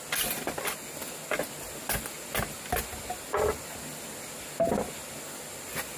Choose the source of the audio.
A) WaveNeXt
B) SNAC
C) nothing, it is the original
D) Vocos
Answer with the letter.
C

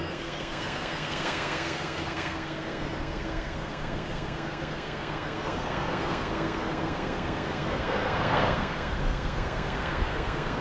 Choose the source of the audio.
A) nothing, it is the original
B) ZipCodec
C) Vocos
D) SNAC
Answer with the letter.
D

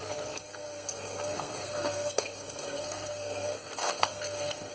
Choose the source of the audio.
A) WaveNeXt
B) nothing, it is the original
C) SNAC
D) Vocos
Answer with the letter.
C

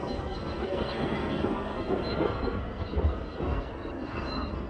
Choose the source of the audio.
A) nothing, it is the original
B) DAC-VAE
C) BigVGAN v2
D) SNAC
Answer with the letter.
D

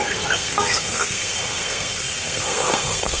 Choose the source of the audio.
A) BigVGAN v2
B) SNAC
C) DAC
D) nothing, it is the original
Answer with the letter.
B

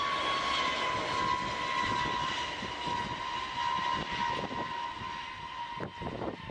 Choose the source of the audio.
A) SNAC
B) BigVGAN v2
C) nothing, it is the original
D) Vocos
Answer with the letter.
C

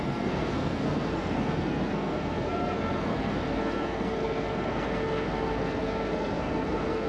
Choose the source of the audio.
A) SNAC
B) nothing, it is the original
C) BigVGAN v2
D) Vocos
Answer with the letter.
A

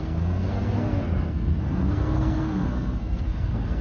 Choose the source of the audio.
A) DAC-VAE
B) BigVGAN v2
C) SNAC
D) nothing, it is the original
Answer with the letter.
C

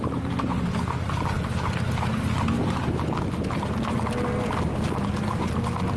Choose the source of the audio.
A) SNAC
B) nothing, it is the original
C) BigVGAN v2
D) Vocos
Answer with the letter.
B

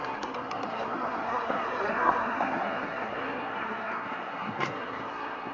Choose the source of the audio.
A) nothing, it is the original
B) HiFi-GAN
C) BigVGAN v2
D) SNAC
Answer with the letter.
D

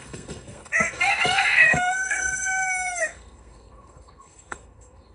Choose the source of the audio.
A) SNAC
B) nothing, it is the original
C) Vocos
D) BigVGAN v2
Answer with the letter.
A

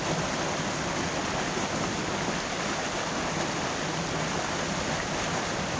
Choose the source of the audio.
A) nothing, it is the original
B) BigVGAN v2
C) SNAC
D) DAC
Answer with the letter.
A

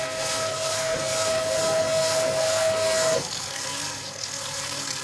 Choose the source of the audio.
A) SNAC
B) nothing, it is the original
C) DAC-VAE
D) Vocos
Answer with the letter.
A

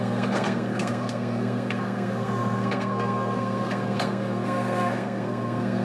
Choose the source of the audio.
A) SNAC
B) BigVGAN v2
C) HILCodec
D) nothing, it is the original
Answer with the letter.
A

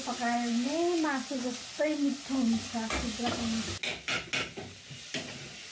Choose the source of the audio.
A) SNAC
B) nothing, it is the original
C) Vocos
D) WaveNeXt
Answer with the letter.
B